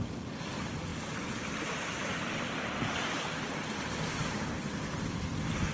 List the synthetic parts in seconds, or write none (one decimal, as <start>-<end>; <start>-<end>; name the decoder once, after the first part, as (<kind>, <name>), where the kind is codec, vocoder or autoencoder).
4.2-5.7 (vocoder, BigVGAN v2)